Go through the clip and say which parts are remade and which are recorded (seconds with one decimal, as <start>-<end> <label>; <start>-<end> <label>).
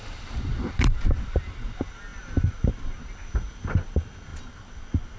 0.0-5.2 recorded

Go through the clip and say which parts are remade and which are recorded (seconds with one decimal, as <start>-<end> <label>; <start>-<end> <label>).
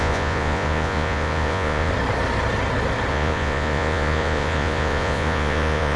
0.0-1.9 remade; 1.9-3.1 recorded; 3.1-6.0 remade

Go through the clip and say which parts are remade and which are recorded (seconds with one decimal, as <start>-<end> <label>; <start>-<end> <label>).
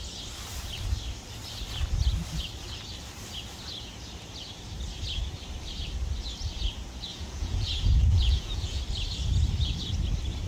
0.0-7.1 recorded; 7.1-8.8 remade; 8.8-10.5 recorded